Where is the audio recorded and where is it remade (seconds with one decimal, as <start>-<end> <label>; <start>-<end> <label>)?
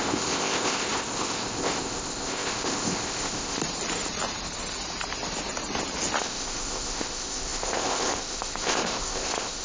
0.0-3.6 remade; 3.6-6.2 recorded; 6.2-9.6 remade